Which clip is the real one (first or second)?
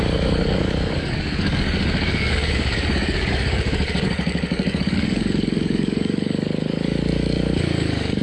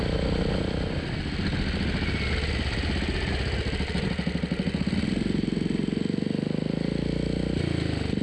second